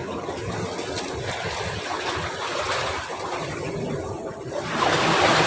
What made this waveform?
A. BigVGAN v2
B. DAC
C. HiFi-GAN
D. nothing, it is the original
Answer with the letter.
D